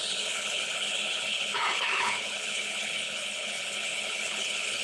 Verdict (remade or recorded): remade